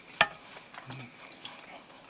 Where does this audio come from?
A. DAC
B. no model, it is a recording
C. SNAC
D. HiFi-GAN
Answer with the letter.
B